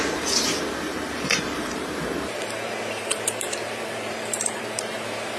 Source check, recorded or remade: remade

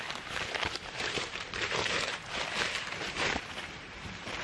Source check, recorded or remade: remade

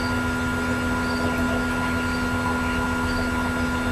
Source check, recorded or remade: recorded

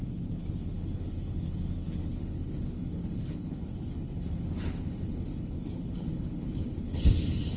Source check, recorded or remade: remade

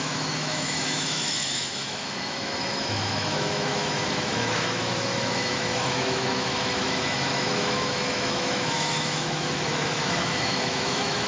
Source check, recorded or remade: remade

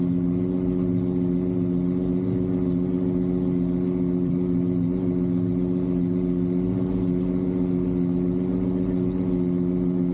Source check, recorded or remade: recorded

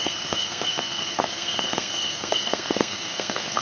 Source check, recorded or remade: remade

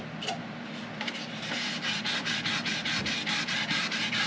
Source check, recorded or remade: recorded